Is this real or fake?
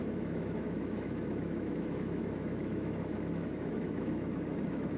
fake